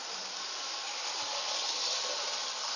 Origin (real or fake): real